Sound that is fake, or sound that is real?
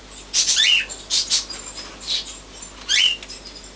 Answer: real